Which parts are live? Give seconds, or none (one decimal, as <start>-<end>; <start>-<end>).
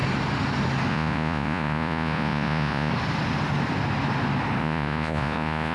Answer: 0.0-0.9; 2.9-4.6